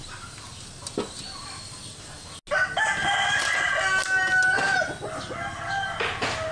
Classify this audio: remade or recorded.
recorded